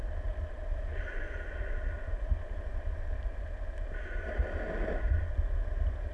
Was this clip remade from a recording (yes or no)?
no